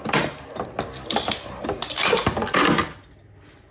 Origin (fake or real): real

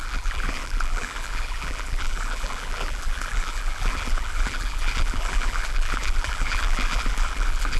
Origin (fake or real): fake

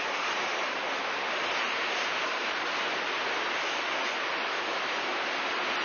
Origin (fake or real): real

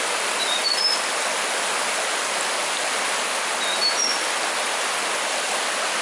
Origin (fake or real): real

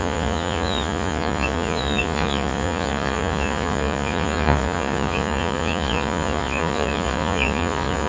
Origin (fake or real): fake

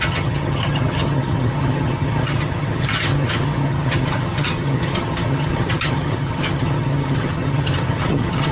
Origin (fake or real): fake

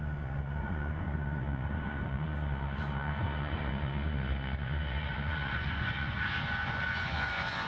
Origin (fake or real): fake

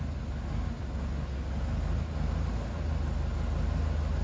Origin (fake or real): real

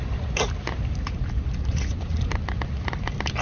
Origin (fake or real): real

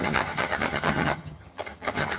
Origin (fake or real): fake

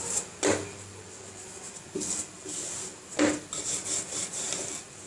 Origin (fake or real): real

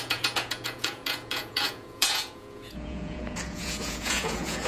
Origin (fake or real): fake